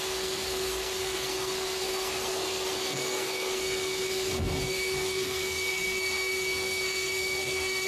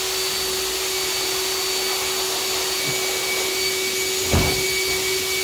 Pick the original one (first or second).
second